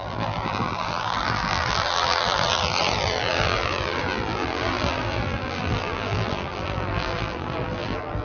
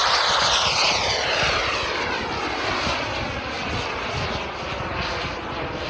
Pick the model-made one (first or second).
first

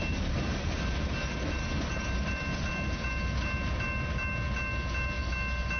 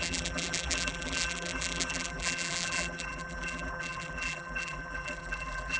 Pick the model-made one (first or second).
second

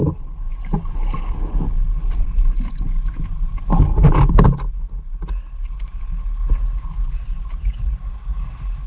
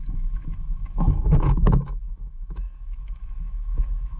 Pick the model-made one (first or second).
second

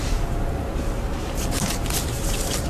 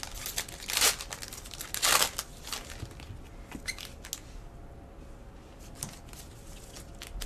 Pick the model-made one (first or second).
first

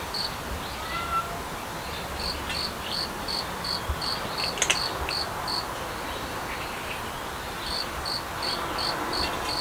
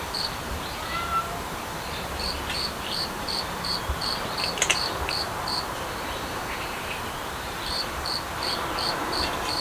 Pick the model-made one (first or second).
second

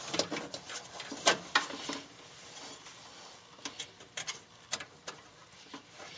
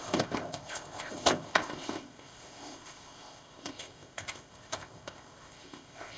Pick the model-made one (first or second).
second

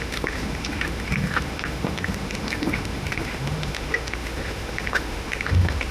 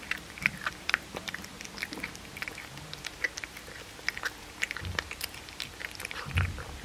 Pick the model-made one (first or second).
first